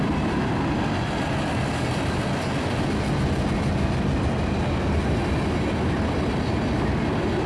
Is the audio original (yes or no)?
yes